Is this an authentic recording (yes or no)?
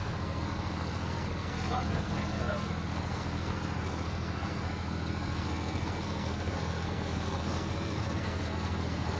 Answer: no